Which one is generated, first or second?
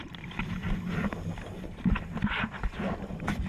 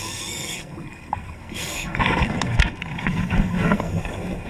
second